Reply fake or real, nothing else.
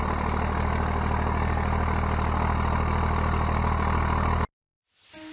real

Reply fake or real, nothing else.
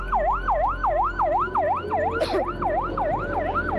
real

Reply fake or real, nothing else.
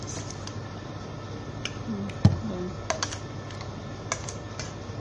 real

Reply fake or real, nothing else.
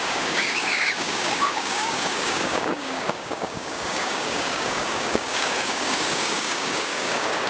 fake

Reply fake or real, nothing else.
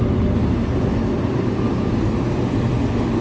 real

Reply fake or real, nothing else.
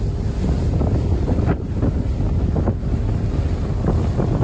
real